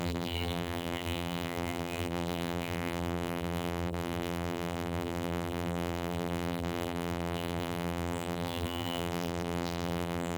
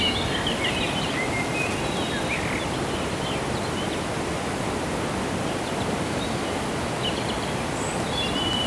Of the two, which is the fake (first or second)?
first